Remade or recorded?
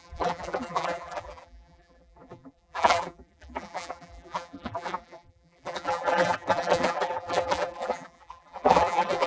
remade